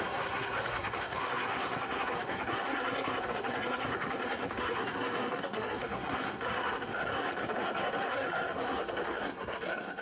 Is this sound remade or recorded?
remade